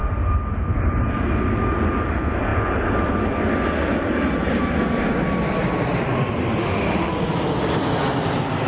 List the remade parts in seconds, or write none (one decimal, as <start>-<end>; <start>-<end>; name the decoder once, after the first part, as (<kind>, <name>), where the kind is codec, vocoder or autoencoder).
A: 6.6-7.1 (autoencoder, DAC-VAE)